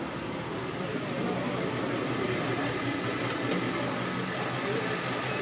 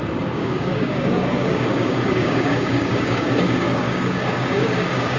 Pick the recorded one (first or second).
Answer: first